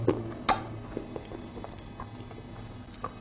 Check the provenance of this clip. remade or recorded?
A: recorded